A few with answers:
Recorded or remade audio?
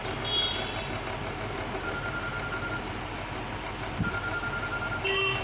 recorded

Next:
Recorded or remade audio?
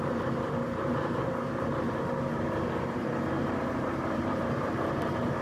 remade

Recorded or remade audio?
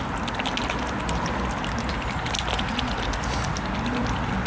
recorded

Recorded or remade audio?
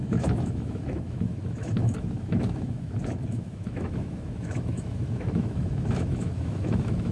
remade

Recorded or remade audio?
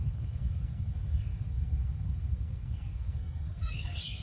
remade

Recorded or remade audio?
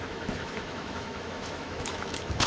remade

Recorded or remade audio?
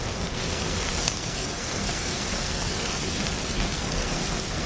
remade